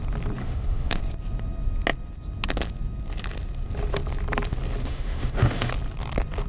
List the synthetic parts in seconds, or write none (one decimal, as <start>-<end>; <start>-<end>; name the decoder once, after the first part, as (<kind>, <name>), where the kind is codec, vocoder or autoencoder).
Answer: 0.4-1.0 (autoencoder, DAC-VAE); 4.8-5.7